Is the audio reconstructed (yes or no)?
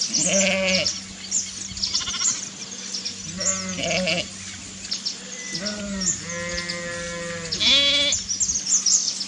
no